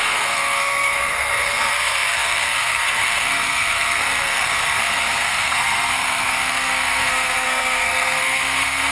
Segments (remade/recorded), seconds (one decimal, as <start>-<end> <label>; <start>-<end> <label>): 0.0-8.9 remade